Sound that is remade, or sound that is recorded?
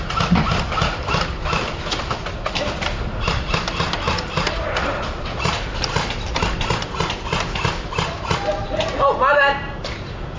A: recorded